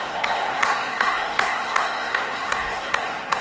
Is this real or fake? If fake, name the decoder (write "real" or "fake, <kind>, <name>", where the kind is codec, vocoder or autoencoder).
fake, codec, SNAC